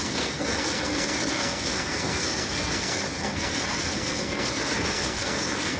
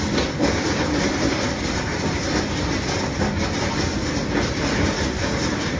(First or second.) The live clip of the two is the second